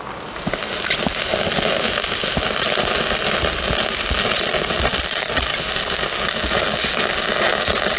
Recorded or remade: recorded